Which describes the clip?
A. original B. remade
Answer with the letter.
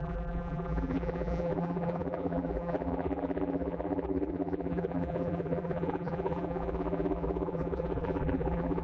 B